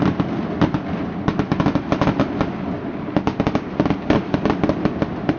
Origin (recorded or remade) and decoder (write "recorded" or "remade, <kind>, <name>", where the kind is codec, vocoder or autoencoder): recorded